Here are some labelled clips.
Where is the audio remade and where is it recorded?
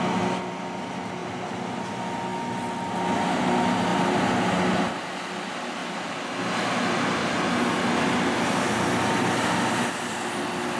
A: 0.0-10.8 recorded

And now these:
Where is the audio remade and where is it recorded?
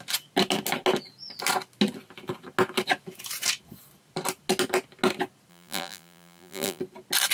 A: 0.0-5.5 recorded; 5.5-6.8 remade; 6.8-7.3 recorded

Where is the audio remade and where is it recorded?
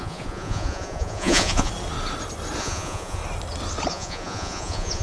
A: 0.0-1.7 remade; 1.7-2.6 recorded; 2.6-3.2 remade; 3.2-3.9 recorded; 3.9-5.0 remade